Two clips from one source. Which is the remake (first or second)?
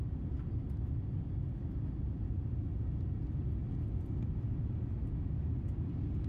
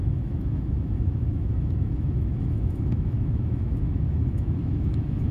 second